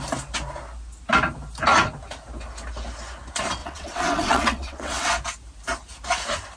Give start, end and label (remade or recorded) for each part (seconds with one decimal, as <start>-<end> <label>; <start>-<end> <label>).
0.0-3.6 recorded; 3.6-5.1 remade; 5.1-6.6 recorded